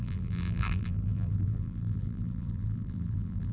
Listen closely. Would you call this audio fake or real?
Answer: fake